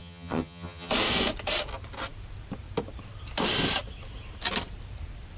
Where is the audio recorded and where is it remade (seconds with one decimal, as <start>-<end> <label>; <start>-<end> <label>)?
0.0-0.9 remade; 0.9-5.4 recorded